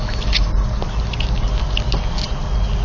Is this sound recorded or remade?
recorded